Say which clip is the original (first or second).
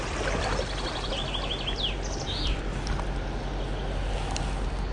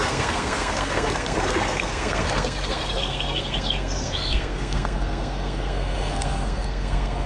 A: first